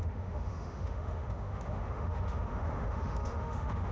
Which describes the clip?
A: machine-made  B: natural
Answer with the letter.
A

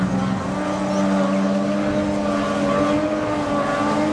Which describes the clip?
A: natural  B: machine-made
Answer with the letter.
A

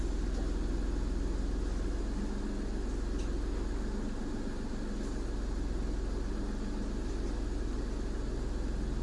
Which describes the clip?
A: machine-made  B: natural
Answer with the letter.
B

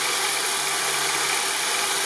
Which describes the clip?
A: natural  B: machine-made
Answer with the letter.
A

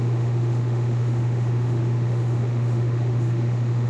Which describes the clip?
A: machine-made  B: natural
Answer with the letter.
A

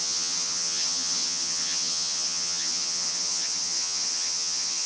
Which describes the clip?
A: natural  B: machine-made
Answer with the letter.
B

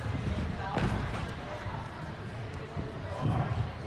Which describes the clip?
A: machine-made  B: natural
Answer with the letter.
B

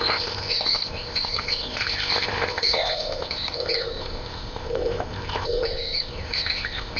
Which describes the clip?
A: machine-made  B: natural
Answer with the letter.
A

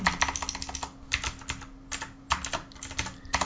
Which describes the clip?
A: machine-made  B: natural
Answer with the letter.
B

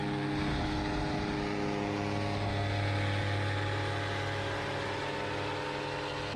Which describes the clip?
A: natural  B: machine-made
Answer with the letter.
A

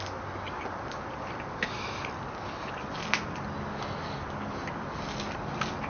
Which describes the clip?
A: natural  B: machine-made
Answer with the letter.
A